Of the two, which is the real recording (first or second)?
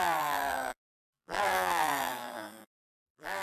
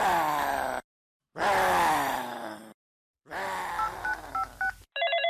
second